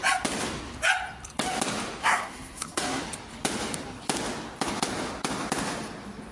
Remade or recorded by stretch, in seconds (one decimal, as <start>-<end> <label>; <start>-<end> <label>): 0.0-2.0 recorded; 2.0-3.0 remade; 3.0-6.3 recorded